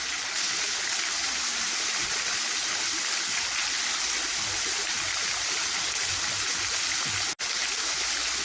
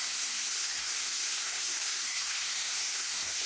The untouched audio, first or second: first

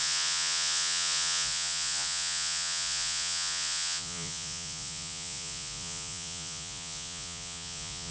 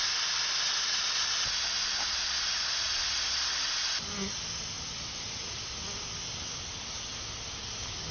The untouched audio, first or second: second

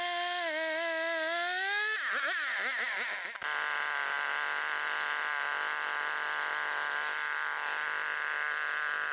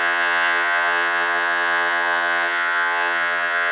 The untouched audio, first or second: first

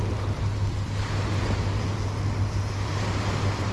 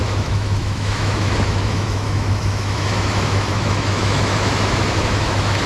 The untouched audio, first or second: first